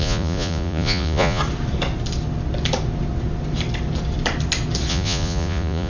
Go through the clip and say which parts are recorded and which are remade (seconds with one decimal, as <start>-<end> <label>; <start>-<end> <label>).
0.0-1.4 remade; 1.4-4.9 recorded; 4.9-5.9 remade